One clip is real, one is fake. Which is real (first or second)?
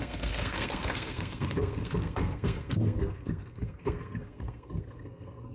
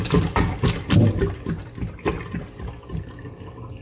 second